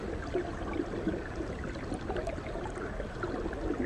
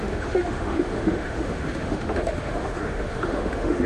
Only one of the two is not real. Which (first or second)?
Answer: second